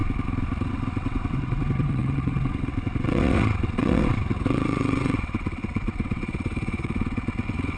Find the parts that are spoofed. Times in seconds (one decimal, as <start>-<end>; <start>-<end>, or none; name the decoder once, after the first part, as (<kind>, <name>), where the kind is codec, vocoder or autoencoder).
0.7-7.8 (vocoder, WaveNeXt)